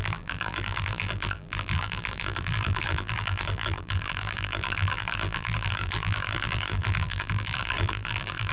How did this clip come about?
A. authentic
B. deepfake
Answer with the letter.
B